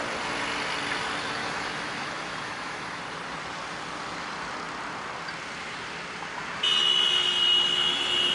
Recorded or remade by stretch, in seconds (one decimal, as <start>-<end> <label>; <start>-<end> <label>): 0.0-1.4 recorded; 1.4-3.0 remade; 3.0-8.3 recorded